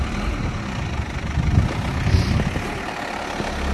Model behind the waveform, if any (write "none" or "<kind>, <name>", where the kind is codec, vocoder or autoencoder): none